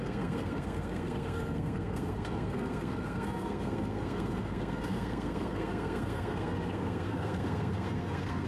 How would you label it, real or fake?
fake